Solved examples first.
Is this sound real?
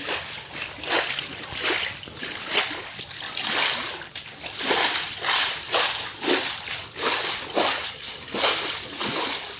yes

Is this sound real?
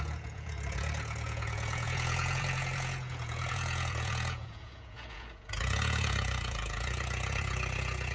no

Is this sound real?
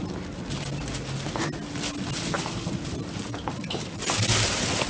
yes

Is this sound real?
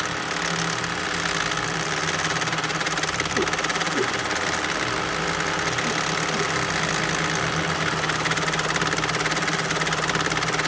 yes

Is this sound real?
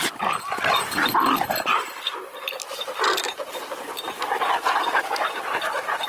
yes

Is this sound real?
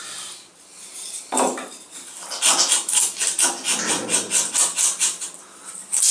yes